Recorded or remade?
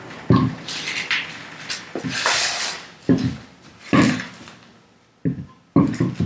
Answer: recorded